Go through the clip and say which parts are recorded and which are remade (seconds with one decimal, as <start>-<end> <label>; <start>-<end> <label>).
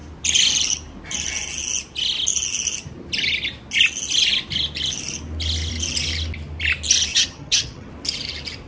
0.0-7.1 recorded; 7.1-7.9 remade; 7.9-8.7 recorded